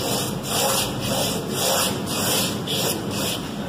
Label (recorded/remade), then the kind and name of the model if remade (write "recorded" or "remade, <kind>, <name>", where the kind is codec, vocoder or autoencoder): recorded